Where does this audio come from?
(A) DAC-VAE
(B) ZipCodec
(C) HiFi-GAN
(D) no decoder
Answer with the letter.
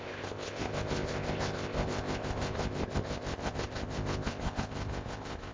B